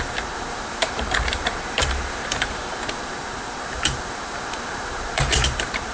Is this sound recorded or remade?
remade